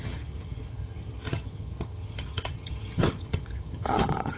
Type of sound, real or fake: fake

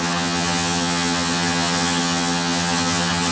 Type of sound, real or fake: fake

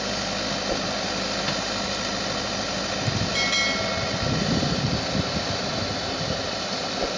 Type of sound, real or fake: real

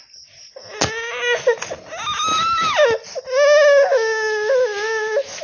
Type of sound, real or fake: real